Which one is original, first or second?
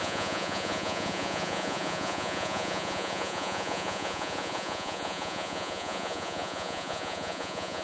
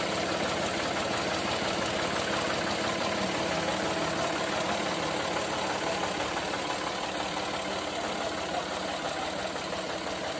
second